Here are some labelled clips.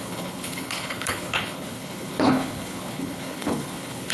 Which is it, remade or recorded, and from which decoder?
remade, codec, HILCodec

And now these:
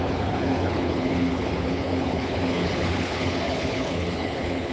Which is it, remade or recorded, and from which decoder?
remade, codec, HILCodec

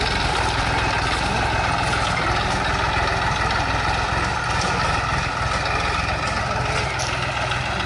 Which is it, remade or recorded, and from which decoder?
recorded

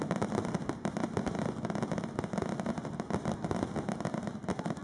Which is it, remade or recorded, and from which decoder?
recorded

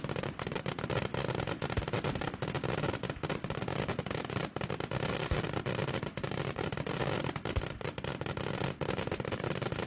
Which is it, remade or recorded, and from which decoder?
recorded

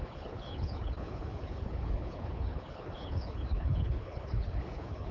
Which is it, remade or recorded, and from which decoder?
remade, codec, HILCodec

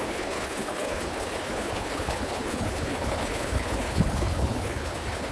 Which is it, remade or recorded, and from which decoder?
remade, codec, HILCodec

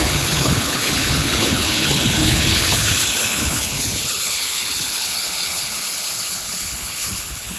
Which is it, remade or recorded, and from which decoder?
remade, codec, HILCodec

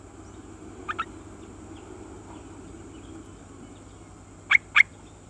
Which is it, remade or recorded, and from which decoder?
recorded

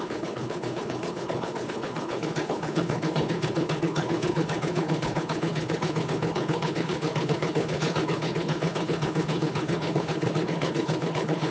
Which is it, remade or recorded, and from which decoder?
remade, codec, HILCodec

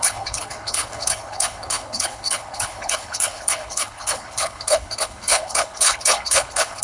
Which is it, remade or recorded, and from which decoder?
remade, codec, HILCodec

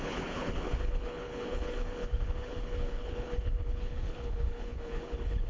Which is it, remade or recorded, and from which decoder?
remade, codec, HILCodec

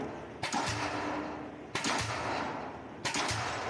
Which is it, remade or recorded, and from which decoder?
recorded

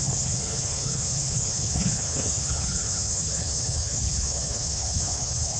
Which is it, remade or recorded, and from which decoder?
remade, codec, HILCodec